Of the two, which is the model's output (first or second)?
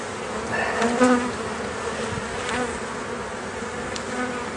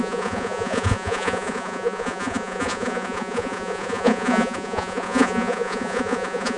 second